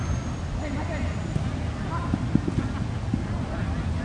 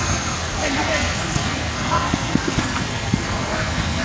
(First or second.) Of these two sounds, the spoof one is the second